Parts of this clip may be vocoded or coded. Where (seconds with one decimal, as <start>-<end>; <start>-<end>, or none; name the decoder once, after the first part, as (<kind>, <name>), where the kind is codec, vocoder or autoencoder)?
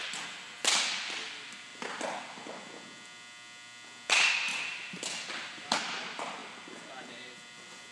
none